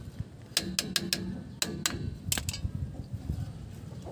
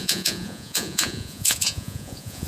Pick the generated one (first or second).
second